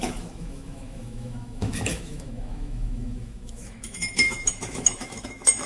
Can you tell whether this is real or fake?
fake